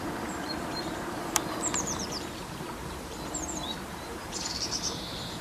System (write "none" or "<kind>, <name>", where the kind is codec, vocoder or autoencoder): vocoder, BigVGAN v2